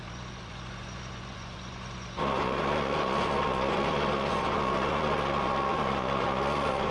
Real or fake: fake